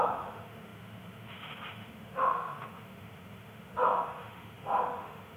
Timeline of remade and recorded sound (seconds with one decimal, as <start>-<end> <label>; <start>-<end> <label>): 0.0-5.4 remade